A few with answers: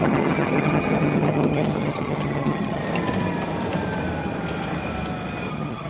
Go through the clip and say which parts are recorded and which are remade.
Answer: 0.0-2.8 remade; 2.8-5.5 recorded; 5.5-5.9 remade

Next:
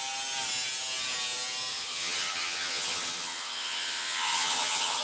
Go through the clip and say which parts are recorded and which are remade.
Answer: 0.0-1.7 recorded; 1.7-5.0 remade

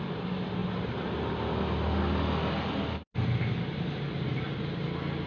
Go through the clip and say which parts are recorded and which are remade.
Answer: 0.0-5.3 recorded

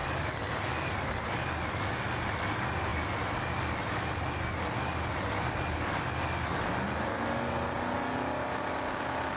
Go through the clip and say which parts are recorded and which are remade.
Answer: 0.0-9.4 recorded

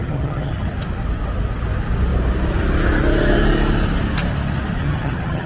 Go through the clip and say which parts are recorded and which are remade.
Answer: 0.0-0.7 remade; 0.7-4.8 recorded; 4.8-5.5 remade

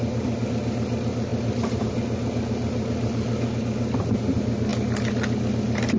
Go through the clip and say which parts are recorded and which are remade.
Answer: 0.0-6.0 recorded